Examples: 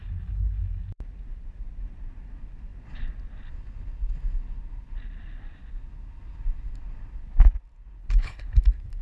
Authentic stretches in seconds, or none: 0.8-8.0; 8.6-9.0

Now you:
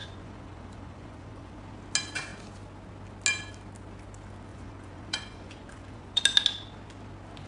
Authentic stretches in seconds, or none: 1.6-4.5; 6.2-7.5

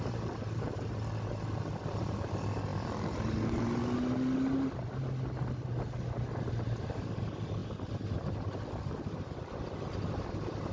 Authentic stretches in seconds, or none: 0.0-10.7

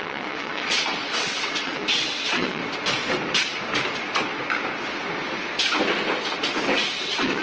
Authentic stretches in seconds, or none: 2.6-7.0